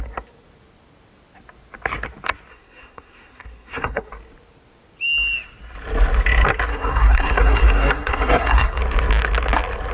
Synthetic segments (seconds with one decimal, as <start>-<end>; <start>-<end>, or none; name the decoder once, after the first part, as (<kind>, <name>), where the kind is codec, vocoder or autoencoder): 2.5-4.1 (codec, SNAC); 6.7-8.8